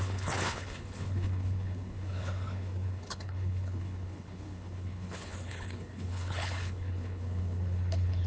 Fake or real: fake